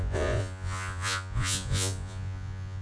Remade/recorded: remade